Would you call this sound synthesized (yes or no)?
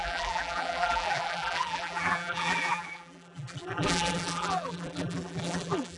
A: yes